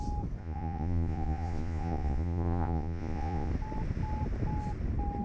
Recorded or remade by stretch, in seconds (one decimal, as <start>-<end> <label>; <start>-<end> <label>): 0.0-0.4 recorded; 0.4-3.5 remade; 3.5-5.2 recorded